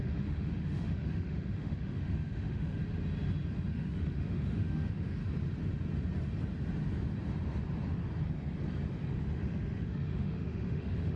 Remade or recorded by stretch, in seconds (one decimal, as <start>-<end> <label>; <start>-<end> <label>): 0.0-2.8 remade; 2.8-3.7 recorded; 3.7-5.2 remade; 5.2-9.1 recorded; 9.1-11.2 remade